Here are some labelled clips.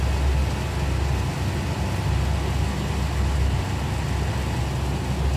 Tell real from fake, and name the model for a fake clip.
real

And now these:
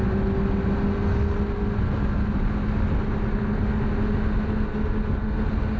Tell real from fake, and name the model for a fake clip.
real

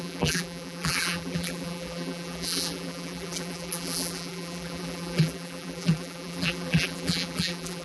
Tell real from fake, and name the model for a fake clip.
fake, vocoder, BigVGAN v2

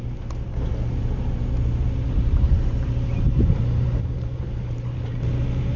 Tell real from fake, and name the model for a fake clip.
fake, vocoder, BigVGAN v2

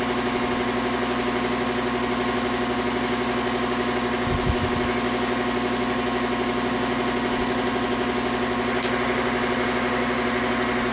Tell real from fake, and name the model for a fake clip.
real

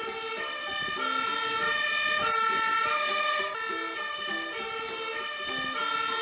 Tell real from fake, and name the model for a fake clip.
real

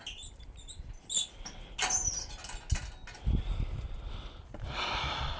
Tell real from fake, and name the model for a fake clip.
real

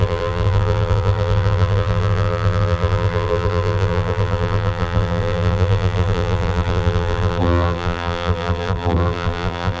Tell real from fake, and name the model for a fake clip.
fake, vocoder, BigVGAN v2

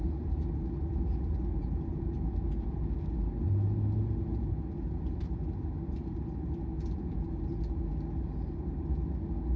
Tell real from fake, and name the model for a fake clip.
real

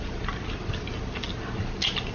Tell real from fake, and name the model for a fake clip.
real